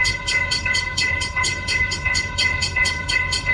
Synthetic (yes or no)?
yes